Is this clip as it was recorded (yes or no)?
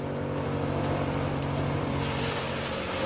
no